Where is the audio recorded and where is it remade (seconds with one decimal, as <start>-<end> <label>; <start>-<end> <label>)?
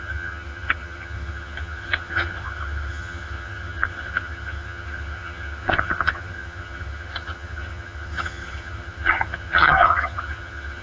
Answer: 0.0-10.8 remade